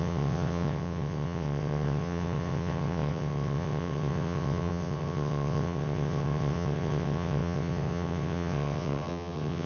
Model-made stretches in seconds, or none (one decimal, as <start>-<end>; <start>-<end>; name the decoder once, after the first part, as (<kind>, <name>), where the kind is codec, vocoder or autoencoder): 0.0-9.7 (vocoder, WaveNeXt)